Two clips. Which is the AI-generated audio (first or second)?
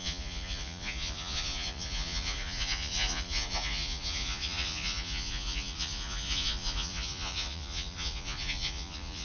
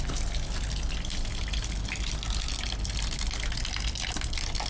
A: first